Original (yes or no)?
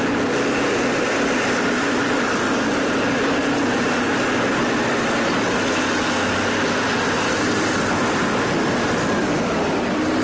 yes